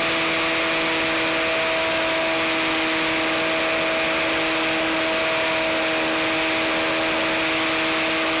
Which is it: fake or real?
real